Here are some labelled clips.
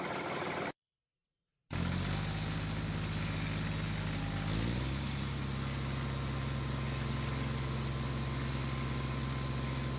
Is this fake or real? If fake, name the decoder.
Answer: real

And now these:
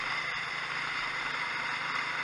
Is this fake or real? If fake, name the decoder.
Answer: real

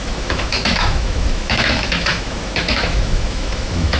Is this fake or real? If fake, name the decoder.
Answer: fake, autoencoder, DAC-VAE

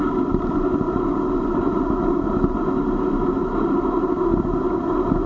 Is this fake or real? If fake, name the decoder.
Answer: real